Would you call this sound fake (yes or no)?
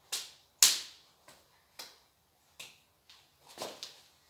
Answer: no